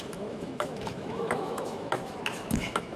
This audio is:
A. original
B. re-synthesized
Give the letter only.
B